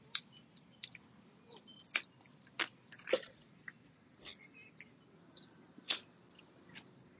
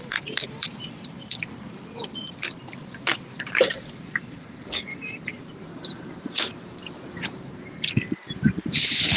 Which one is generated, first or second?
second